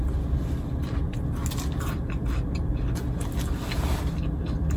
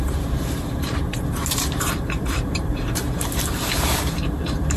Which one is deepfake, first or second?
second